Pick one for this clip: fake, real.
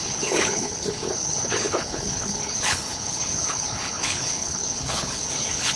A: fake